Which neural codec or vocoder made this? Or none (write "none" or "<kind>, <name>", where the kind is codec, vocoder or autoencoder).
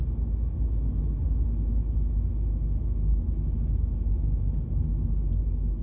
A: none